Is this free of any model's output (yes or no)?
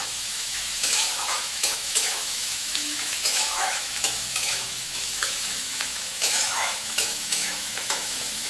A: no